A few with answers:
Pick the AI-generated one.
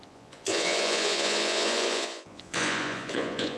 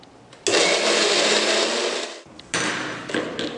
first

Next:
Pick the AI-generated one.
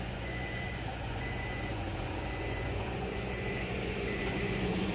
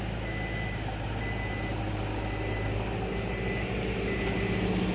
first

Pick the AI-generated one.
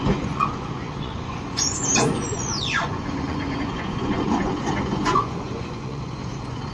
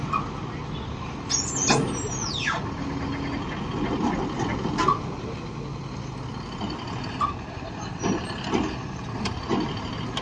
first